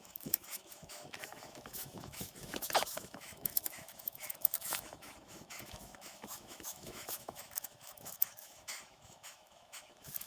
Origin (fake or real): fake